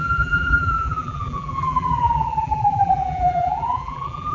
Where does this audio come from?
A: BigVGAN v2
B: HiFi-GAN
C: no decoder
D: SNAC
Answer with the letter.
A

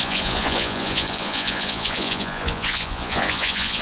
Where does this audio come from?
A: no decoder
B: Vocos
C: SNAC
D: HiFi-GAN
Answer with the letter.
B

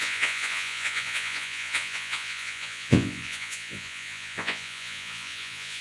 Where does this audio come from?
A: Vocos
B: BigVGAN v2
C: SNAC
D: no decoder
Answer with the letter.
A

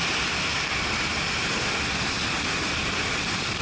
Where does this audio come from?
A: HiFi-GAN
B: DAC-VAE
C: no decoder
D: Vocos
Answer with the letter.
C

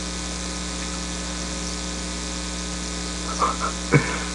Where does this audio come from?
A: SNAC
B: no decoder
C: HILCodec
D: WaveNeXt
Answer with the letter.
B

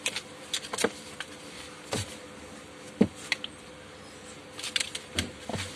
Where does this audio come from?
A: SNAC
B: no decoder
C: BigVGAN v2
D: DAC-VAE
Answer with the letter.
B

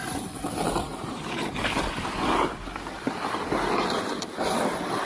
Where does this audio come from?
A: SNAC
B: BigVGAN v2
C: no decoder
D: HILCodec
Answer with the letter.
B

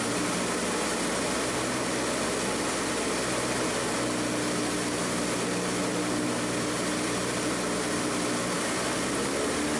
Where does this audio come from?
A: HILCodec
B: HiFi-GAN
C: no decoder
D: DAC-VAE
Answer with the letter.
C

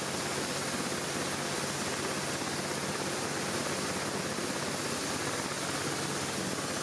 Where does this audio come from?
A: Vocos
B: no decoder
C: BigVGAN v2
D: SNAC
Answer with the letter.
B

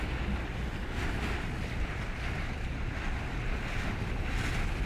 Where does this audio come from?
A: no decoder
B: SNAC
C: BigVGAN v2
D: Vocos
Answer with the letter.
A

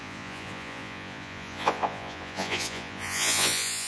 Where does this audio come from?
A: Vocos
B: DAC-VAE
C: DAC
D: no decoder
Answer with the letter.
A